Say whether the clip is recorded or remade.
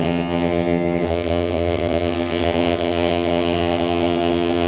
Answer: remade